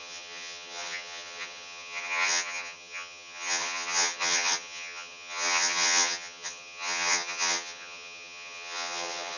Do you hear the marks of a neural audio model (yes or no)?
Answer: yes